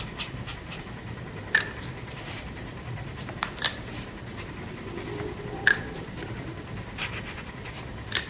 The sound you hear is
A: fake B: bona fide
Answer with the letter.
A